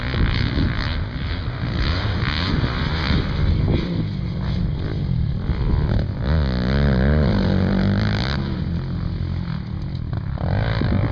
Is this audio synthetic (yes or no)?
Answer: no